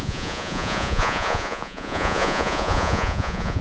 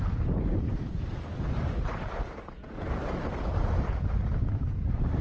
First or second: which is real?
second